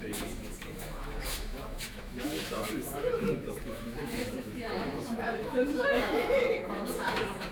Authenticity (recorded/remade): remade